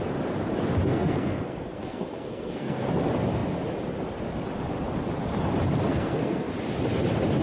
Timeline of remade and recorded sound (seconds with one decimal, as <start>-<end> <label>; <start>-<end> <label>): 0.0-0.9 recorded; 0.9-2.9 remade; 2.9-5.9 recorded; 5.9-6.5 remade; 6.5-7.4 recorded